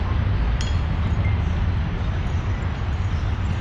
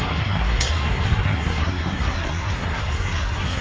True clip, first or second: first